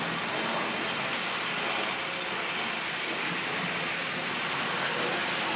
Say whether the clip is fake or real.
real